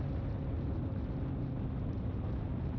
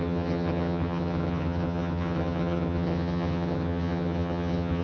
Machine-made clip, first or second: second